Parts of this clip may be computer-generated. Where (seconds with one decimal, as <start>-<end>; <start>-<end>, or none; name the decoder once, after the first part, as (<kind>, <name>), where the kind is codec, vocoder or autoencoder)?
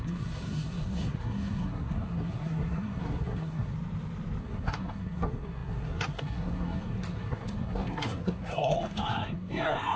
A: 0.0-3.7 (codec, SNAC); 4.4-10.0